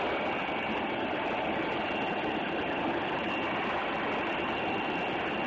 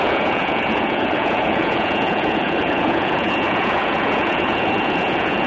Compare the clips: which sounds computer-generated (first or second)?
second